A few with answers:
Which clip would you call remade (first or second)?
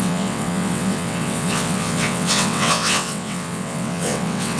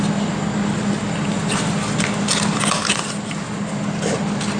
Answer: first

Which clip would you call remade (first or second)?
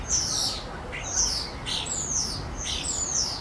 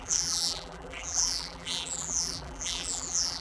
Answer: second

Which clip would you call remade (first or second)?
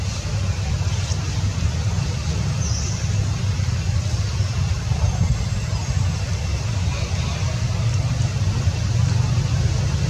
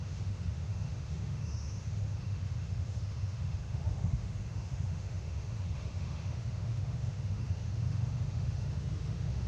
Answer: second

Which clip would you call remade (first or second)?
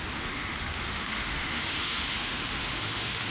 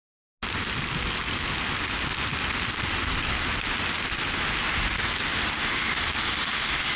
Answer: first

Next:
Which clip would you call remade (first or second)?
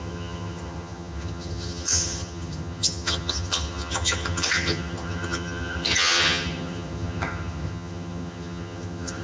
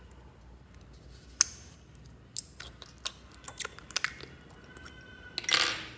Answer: first